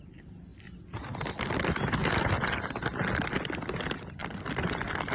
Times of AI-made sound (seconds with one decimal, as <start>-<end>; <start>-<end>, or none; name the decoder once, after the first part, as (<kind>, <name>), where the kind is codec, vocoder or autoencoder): none